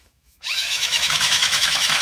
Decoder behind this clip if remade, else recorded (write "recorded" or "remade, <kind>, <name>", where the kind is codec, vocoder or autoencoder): remade, autoencoder, DAC-VAE